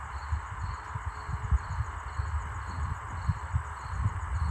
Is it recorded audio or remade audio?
remade